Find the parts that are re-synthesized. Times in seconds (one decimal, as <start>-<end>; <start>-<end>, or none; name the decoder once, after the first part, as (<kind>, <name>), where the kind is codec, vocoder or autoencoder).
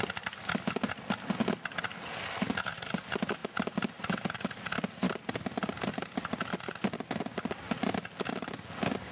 3.4-5.7 (vocoder, BigVGAN v2)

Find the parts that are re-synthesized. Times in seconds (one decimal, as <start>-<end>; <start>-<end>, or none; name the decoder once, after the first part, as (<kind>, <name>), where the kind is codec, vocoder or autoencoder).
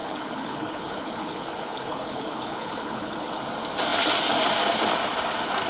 0.0-3.4 (codec, HILCodec)